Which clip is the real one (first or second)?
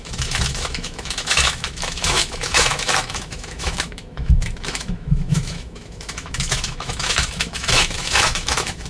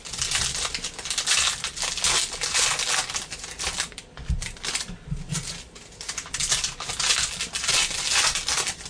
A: second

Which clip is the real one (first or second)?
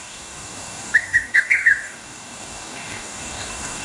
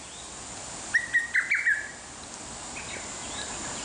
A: second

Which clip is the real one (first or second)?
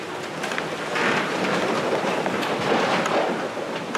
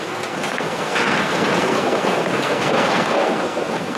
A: first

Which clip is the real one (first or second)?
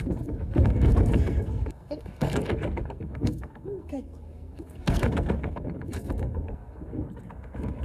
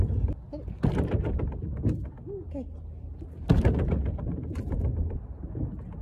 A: second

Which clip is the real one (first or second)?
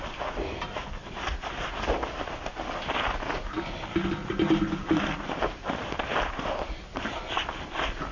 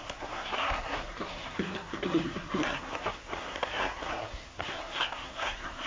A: first